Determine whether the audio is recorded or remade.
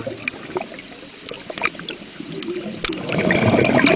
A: recorded